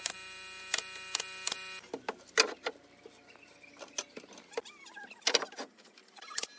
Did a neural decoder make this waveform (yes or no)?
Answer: no